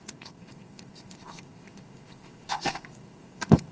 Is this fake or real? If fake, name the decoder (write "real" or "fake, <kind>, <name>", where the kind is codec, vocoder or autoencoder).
fake, codec, ZipCodec